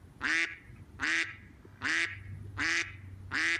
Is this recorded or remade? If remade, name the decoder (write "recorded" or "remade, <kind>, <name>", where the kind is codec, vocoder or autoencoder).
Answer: recorded